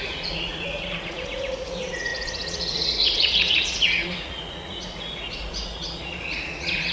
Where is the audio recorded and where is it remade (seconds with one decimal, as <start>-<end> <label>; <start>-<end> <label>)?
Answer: 0.0-6.9 remade

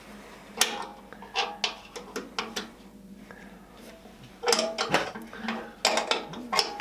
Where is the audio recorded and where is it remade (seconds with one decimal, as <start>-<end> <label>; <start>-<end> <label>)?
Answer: 0.0-6.8 recorded

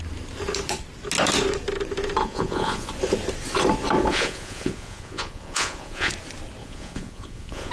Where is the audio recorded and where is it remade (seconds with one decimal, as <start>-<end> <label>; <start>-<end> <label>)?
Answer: 0.0-2.2 recorded; 2.2-2.9 remade; 2.9-4.1 recorded; 4.1-6.1 remade; 6.1-6.6 recorded; 6.6-7.7 remade

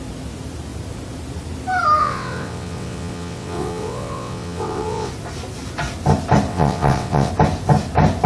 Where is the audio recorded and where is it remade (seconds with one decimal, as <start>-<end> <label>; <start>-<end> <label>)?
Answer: 0.0-2.0 recorded; 2.0-5.1 remade; 5.1-6.5 recorded; 6.5-7.3 remade; 7.3-8.3 recorded

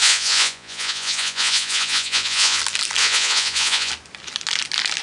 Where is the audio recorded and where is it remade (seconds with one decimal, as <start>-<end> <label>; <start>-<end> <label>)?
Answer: 0.0-2.6 remade; 2.6-3.0 recorded; 3.0-3.9 remade; 3.9-5.0 recorded